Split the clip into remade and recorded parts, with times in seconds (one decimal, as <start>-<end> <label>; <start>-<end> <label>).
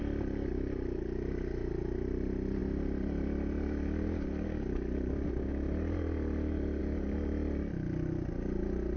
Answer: 0.0-9.0 recorded